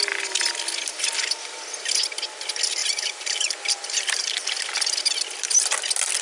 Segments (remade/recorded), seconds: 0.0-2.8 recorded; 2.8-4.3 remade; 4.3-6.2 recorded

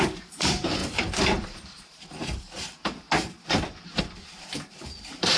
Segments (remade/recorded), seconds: 0.0-5.4 remade

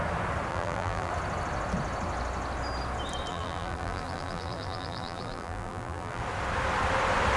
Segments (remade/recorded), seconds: 0.0-0.5 recorded; 0.5-1.1 remade; 1.1-3.3 recorded; 3.3-6.2 remade; 6.2-7.4 recorded

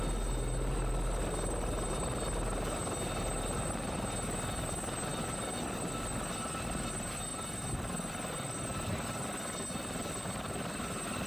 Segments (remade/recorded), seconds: 0.0-11.3 recorded

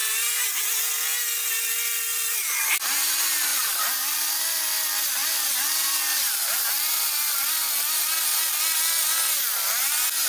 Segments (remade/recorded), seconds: 0.0-3.5 recorded; 3.5-4.7 remade; 4.7-5.2 recorded; 5.2-7.6 remade; 7.6-10.3 recorded

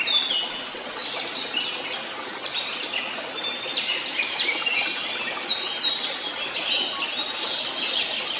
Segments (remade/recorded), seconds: 0.0-1.0 recorded; 1.0-5.7 remade; 5.7-8.4 recorded

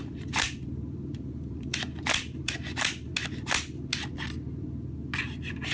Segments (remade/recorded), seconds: 0.0-3.1 remade; 3.1-5.7 recorded